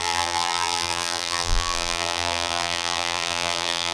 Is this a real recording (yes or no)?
no